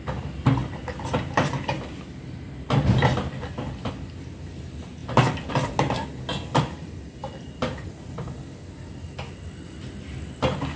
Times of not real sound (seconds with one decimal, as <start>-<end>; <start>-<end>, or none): 0.6-3.9; 7.2-7.9